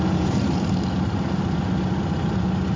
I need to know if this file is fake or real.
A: real